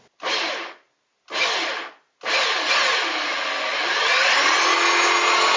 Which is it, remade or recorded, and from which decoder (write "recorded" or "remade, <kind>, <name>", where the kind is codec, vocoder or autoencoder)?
recorded